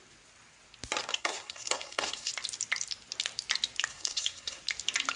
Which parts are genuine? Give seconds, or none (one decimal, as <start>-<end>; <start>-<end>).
0.0-1.1; 2.3-3.9; 4.6-5.2